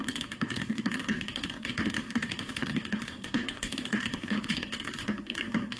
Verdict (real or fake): fake